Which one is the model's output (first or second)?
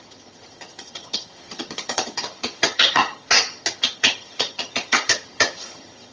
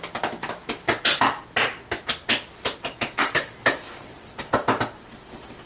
first